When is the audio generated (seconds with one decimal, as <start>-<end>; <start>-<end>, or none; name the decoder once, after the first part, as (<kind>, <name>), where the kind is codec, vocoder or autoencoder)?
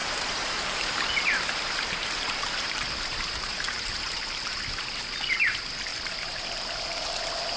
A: 0.0-4.6 (vocoder, BigVGAN v2); 5.9-6.5